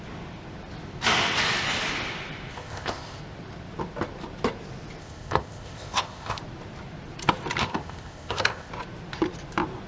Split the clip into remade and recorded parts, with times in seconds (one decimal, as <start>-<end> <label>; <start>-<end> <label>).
0.0-2.5 recorded; 2.5-3.2 remade; 3.2-5.0 recorded; 5.0-6.4 remade; 6.4-7.6 recorded; 7.6-8.7 remade; 8.7-9.9 recorded